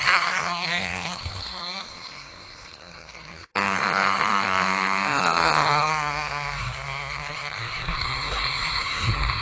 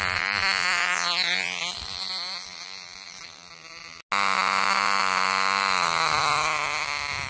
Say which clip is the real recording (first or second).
second